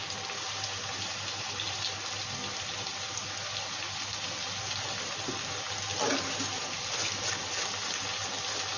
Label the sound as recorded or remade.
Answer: recorded